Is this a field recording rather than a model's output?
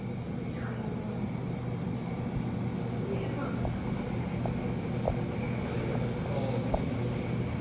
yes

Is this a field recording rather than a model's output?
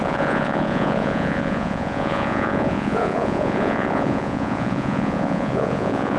no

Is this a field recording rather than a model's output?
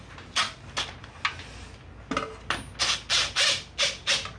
yes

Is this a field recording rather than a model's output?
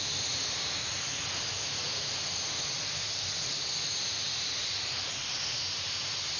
yes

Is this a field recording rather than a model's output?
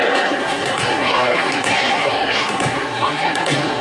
no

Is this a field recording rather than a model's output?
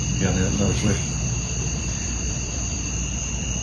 no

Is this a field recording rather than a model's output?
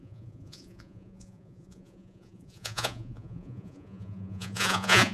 no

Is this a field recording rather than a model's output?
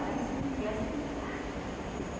yes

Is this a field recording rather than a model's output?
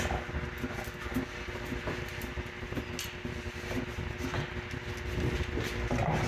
yes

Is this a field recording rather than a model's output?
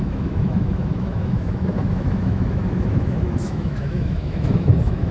no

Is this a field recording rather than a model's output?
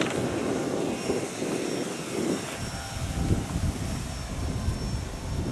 yes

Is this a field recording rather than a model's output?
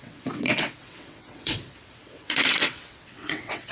no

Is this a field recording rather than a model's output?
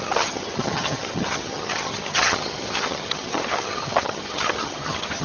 no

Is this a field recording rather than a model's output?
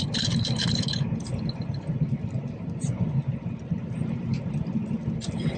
yes